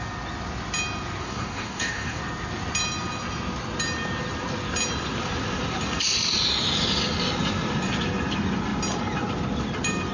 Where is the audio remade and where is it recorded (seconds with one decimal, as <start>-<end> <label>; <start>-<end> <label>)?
0.0-1.2 recorded; 1.2-2.2 remade; 2.2-10.1 recorded